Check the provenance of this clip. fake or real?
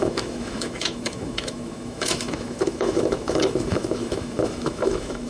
fake